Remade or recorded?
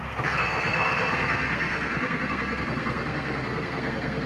remade